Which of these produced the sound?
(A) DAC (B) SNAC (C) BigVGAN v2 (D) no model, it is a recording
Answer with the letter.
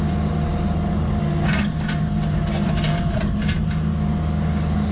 D